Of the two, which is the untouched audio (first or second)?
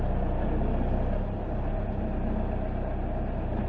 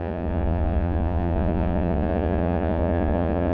first